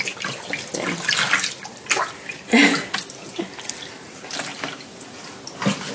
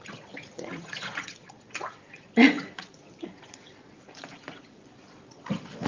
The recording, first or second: first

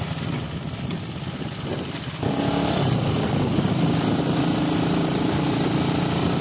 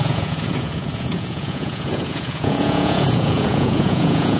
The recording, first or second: first